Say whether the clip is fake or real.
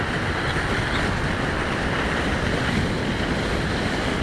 real